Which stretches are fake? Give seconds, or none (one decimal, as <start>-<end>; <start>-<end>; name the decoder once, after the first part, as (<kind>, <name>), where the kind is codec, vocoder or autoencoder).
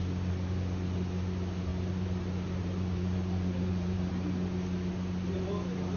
1.7-4.1 (vocoder, BigVGAN v2)